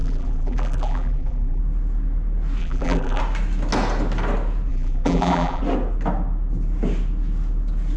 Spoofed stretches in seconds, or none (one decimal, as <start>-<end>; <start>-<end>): 0.0-1.6; 2.6-3.2; 4.7-5.6